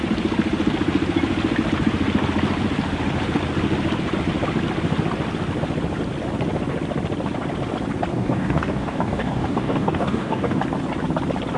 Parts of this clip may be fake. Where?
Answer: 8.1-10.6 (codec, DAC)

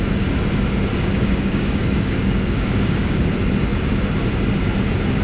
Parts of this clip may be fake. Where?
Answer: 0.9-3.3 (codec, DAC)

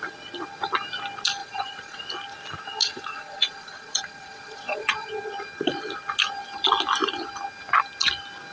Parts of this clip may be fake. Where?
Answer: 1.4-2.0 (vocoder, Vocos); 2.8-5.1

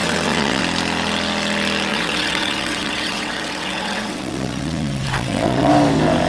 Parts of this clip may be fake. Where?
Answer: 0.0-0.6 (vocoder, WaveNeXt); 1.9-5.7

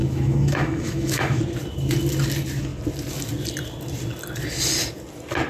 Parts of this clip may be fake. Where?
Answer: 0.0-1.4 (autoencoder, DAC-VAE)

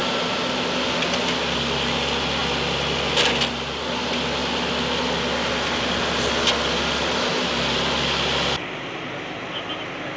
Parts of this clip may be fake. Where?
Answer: none

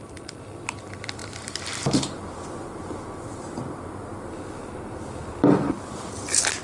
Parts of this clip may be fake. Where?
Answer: 0.0-1.2 (vocoder, BigVGAN v2); 2.4-6.6